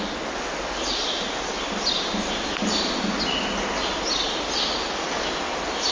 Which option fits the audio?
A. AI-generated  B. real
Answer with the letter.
B